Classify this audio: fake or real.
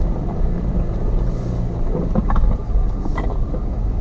fake